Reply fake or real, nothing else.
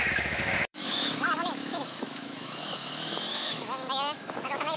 fake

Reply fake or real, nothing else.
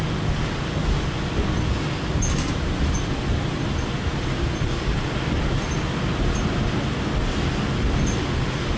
real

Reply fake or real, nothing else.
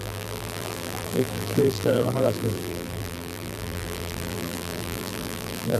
fake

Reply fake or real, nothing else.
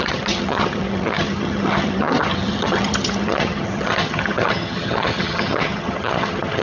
fake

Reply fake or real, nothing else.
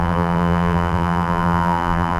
fake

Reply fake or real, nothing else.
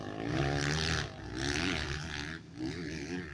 real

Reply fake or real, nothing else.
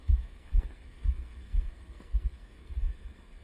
fake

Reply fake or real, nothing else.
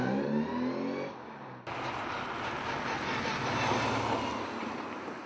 real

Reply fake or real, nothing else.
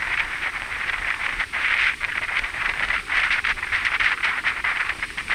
fake